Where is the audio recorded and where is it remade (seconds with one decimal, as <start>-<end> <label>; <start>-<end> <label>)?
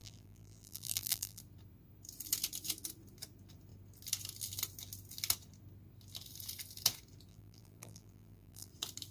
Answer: 0.0-1.4 remade; 1.4-7.3 recorded; 7.3-8.7 remade; 8.7-9.1 recorded